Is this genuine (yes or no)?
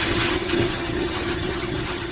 no